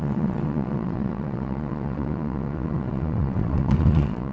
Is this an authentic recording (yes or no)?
no